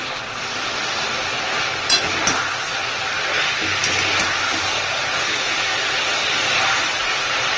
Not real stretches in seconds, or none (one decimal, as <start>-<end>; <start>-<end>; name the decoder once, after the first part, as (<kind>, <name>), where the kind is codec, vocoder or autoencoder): none